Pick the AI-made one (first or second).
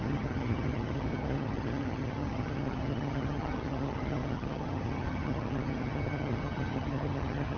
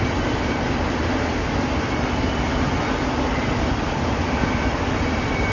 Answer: first